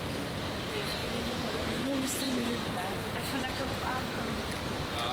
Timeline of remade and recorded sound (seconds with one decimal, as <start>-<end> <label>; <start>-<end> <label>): 0.0-1.0 recorded; 1.0-4.0 remade; 4.0-5.1 recorded